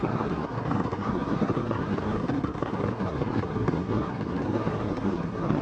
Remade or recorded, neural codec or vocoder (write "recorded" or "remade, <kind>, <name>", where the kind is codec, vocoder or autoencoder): remade, codec, SNAC